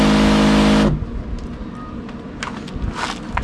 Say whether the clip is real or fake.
real